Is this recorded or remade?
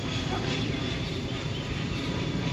remade